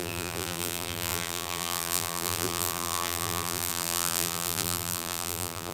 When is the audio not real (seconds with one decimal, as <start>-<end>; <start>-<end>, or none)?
0.0-5.7